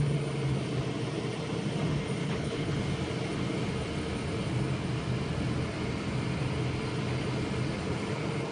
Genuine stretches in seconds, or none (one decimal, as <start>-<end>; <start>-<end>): 0.0-2.2; 2.7-8.5